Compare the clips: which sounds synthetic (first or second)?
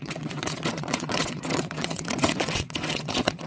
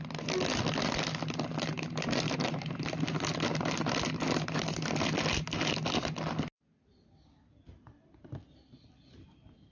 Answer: first